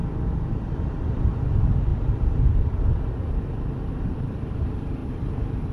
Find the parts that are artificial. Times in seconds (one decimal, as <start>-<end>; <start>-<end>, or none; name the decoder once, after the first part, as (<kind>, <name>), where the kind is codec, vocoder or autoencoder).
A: 0.6-5.7 (vocoder, BigVGAN v2)